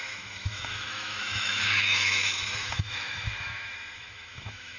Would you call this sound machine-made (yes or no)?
yes